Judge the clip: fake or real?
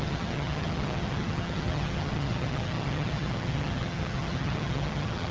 fake